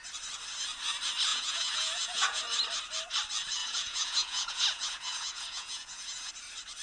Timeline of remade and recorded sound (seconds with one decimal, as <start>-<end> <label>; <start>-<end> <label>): 0.0-1.3 recorded; 1.3-2.4 remade; 2.4-3.6 recorded; 3.6-6.3 remade; 6.3-6.8 recorded